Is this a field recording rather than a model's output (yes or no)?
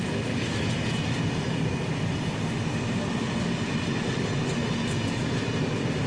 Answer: yes